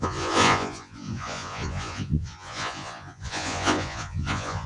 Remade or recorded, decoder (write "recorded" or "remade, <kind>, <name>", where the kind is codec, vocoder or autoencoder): remade, vocoder, Vocos